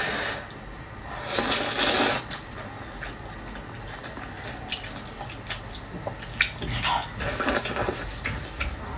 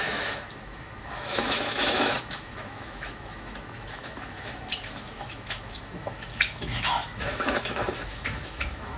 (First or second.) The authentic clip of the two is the first